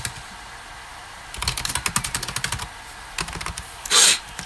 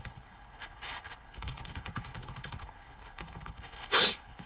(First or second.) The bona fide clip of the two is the first